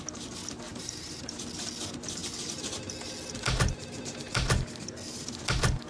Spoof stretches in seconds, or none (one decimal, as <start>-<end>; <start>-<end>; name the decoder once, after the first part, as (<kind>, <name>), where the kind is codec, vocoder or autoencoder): 0.7-1.4 (vocoder, BigVGAN v2)